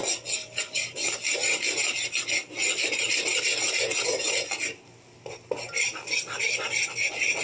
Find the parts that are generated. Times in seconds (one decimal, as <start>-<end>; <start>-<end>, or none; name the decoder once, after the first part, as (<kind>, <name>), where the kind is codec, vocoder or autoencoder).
none